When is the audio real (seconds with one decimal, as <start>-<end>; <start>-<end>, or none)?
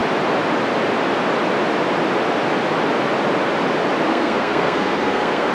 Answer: 0.0-4.1